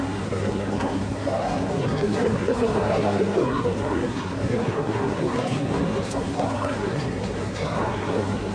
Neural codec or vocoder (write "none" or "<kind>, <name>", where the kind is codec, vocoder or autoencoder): codec, SNAC